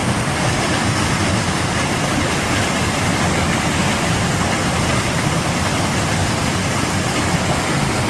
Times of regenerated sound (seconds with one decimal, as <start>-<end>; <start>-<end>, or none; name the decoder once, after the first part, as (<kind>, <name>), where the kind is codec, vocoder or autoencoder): 0.0-4.9 (vocoder, BigVGAN v2); 6.2-7.2